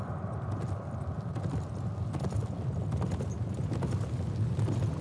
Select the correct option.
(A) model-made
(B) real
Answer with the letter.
B